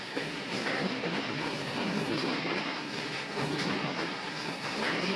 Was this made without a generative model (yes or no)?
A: no